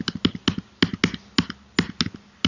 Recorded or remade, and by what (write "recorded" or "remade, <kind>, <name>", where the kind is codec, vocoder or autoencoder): recorded